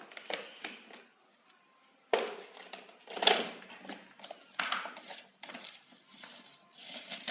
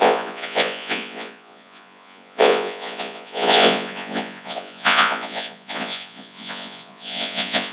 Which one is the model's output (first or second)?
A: second